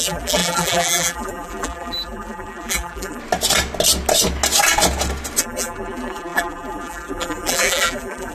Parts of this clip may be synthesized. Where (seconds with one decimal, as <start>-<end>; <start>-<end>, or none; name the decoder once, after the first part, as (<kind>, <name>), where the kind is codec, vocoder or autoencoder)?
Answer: 0.0-3.2 (vocoder, BigVGAN v2); 5.4-8.3